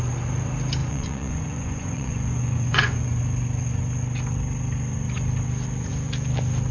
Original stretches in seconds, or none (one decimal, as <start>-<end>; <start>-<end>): 0.0-0.8; 3.2-6.7